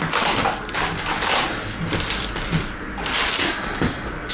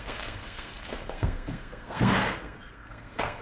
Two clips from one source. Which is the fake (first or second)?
second